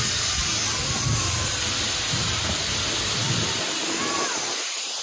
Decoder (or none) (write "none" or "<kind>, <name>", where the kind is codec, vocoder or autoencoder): none